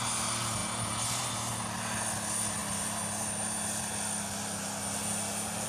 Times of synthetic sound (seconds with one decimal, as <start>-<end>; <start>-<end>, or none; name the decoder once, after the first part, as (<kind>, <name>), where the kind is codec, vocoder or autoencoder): none